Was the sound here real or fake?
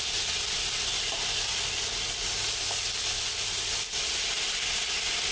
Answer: real